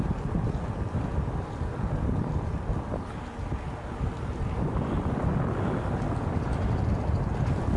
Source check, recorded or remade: recorded